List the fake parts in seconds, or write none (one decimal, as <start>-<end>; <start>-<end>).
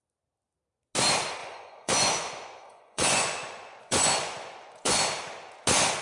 1.4-5.0